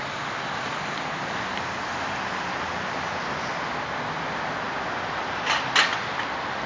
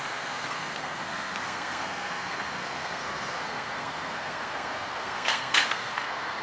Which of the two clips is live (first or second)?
first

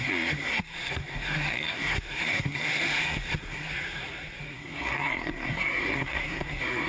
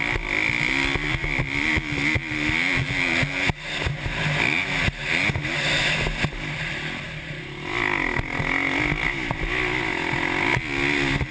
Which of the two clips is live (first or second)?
second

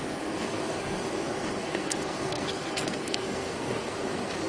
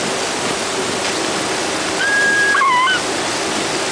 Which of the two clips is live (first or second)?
second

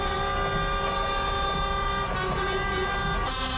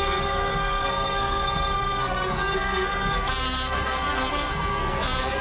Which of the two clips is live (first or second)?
first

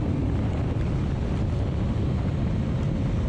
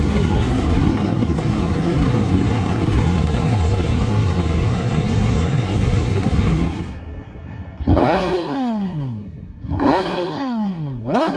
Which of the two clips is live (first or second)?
first